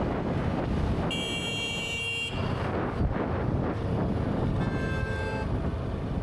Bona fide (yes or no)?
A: yes